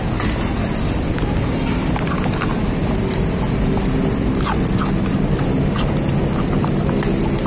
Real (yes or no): yes